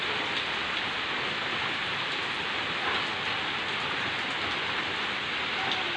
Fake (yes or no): no